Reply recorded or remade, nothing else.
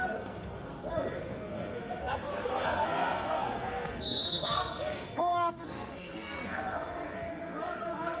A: remade